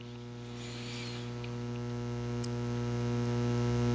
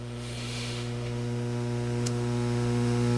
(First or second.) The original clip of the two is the first